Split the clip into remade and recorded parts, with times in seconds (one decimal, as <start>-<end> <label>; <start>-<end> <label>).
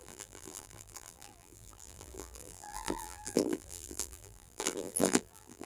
0.0-5.7 remade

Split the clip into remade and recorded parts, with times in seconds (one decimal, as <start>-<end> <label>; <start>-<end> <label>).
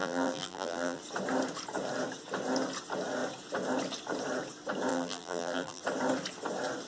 0.0-1.0 remade; 1.0-4.9 recorded; 4.9-5.8 remade; 5.8-6.9 recorded